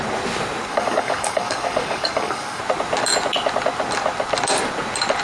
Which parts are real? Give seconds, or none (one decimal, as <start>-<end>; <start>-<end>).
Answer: 0.0-0.7; 2.6-5.2